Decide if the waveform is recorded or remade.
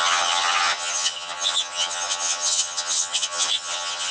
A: remade